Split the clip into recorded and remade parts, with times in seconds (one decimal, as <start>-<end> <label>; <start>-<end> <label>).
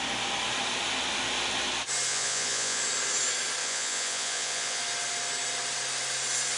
0.0-2.1 recorded; 2.1-2.8 remade; 2.8-3.6 recorded; 3.6-4.8 remade; 4.8-6.6 recorded